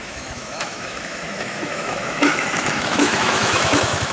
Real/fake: fake